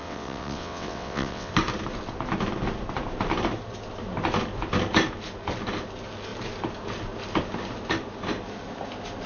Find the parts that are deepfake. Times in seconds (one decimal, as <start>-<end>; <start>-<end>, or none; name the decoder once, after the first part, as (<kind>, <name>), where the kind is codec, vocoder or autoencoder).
0.0-1.5 (vocoder, WaveNeXt)